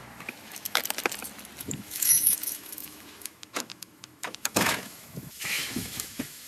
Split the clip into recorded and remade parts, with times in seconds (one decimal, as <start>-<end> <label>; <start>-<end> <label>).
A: 0.0-0.8 remade; 0.8-1.6 recorded; 1.6-6.5 remade